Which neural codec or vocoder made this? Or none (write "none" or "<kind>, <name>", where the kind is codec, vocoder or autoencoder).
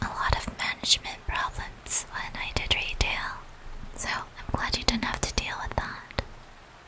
none